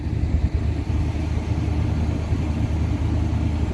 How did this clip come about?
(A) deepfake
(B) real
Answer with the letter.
B